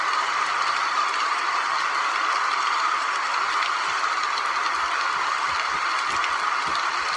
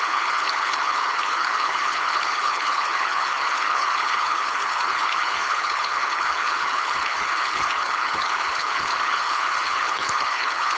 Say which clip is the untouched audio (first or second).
first